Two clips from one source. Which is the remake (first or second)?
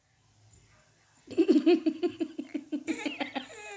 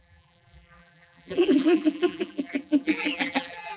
second